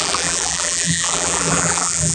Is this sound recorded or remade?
remade